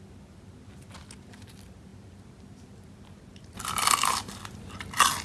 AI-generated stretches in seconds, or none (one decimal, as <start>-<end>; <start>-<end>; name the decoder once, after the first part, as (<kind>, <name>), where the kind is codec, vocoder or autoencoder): none